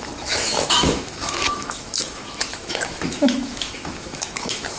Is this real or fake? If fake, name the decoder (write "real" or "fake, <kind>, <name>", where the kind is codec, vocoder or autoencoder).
fake, autoencoder, DAC-VAE